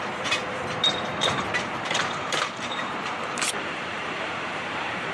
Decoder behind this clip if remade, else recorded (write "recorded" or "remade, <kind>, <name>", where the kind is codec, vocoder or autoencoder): remade, vocoder, BigVGAN v2